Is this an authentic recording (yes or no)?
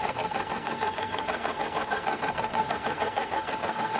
no